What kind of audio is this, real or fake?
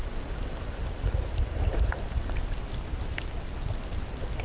real